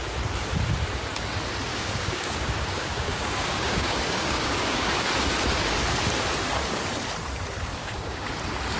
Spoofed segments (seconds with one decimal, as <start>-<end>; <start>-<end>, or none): 1.7-5.1; 7.8-8.3